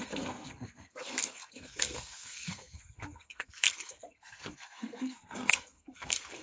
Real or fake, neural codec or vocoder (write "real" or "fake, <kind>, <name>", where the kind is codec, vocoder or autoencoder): fake, codec, SNAC